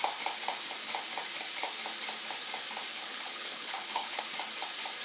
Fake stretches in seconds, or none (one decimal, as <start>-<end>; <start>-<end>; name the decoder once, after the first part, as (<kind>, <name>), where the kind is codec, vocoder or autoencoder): 2.9-4.2 (codec, HILCodec)